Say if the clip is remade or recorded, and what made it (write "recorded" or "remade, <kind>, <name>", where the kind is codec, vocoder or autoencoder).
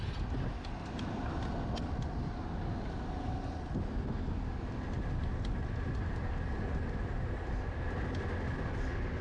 recorded